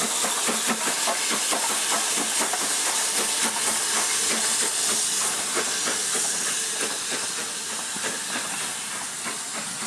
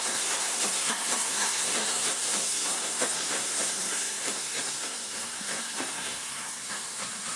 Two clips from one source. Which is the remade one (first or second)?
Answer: second